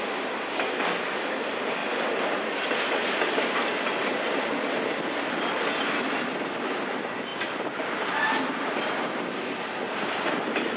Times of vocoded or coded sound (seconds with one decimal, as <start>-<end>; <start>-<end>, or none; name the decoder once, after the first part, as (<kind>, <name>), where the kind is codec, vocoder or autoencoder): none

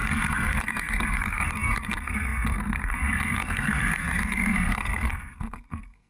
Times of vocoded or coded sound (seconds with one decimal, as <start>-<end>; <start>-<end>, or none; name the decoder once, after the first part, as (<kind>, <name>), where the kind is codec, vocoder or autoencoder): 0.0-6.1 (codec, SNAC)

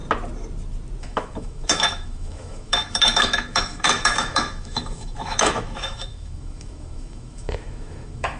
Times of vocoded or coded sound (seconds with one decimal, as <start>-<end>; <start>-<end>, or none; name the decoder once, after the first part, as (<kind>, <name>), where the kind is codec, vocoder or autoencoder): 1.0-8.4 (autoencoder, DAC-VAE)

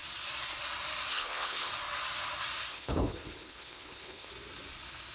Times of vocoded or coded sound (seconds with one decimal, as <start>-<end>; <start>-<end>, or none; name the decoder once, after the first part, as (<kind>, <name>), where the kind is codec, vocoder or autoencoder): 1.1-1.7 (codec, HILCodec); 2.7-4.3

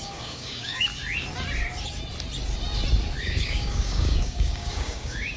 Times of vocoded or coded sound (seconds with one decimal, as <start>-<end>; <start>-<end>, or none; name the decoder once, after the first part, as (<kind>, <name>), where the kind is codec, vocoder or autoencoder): 0.0-0.9 (codec, DAC); 3.2-5.4

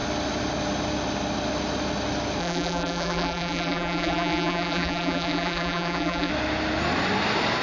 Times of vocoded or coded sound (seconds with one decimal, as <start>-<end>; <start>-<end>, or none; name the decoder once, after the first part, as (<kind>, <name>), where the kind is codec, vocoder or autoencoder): 2.4-6.3 (vocoder, BigVGAN v2)

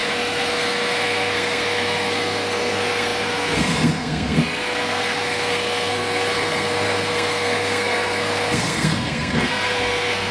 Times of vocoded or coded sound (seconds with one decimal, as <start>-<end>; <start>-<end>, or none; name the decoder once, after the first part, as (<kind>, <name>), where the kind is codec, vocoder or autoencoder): 0.0-10.3 (codec, SNAC)